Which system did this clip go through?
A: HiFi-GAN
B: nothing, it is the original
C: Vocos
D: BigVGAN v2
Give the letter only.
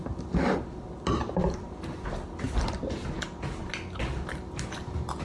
B